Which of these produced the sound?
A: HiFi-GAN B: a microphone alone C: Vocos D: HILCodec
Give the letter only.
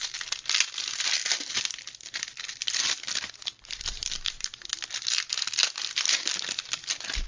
B